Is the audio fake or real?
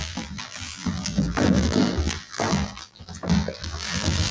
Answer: fake